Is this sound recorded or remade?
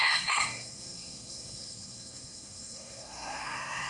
remade